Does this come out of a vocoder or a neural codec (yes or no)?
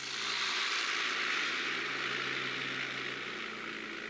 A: no